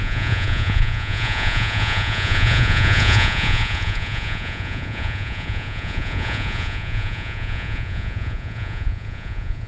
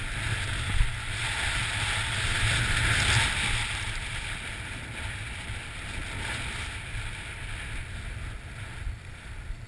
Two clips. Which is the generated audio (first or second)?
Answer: first